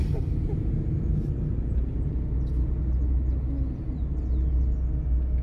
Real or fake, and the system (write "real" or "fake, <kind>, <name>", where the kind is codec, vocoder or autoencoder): real